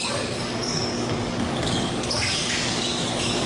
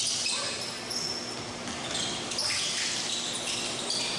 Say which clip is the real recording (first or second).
second